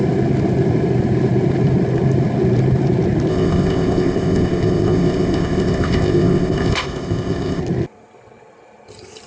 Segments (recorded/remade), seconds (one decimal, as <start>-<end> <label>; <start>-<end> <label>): 0.0-3.3 recorded; 3.3-7.6 remade; 7.6-9.3 recorded